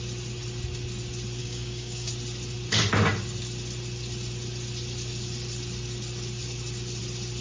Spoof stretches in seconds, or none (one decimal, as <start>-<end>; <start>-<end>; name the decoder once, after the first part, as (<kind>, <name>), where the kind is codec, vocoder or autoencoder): 1.4-2.1 (codec, DAC)